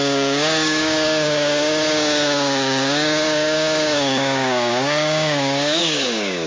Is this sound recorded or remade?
remade